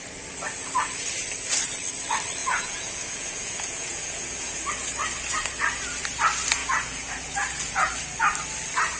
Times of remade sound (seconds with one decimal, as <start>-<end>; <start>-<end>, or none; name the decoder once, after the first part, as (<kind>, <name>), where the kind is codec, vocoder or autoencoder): 2.4-4.7 (vocoder, Vocos); 6.6-7.9